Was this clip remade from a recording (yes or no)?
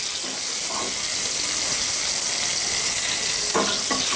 no